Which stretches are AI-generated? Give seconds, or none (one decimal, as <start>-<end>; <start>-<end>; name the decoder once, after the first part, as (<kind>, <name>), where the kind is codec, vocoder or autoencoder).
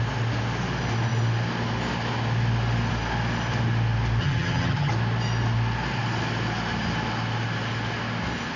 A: 4.2-4.9 (vocoder, HiFi-GAN)